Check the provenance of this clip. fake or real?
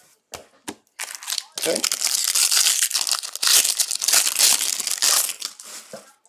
real